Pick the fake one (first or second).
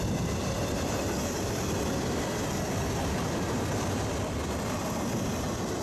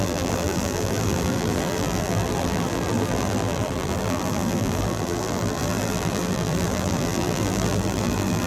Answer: second